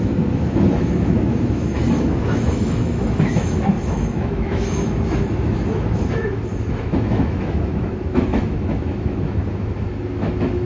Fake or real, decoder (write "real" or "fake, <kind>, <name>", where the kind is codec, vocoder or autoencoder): fake, autoencoder, DAC-VAE